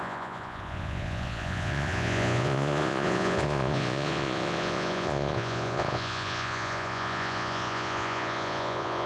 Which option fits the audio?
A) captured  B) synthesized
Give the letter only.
B